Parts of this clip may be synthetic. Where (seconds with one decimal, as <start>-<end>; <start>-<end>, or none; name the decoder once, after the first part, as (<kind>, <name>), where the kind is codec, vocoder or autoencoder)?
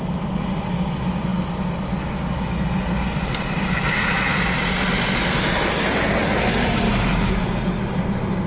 none